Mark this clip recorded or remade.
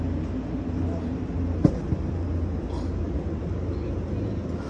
recorded